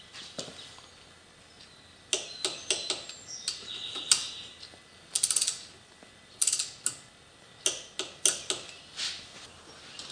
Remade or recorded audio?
recorded